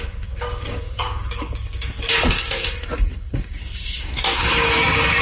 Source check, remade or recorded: remade